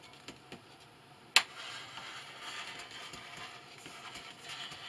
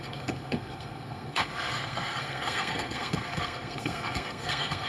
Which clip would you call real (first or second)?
first